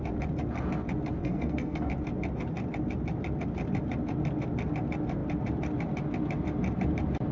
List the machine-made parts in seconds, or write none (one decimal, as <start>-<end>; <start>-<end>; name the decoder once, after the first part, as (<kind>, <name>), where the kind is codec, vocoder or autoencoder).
1.2-1.9 (codec, SNAC)